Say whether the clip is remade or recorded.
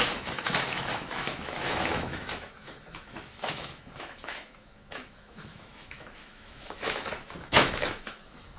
remade